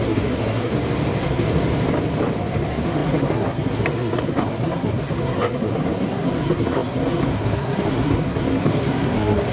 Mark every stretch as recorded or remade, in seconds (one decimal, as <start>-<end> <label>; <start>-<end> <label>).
0.0-0.7 remade; 0.7-1.2 recorded; 1.2-1.6 remade; 1.6-2.4 recorded; 2.4-9.5 remade